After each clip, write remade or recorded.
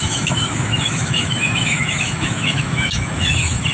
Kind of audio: remade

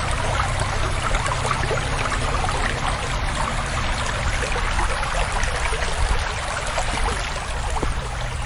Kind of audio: recorded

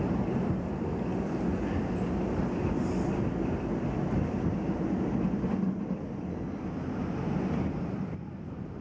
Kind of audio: recorded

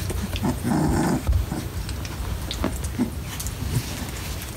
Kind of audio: recorded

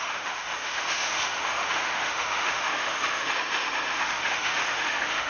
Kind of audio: remade